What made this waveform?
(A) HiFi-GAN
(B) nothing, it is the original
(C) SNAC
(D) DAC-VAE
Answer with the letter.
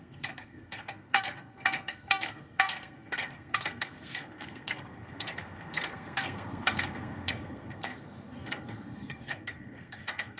C